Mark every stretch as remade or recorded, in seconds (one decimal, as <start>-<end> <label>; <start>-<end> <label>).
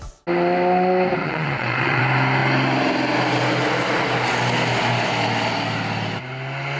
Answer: 0.0-1.2 recorded; 1.2-2.0 remade; 2.0-6.8 recorded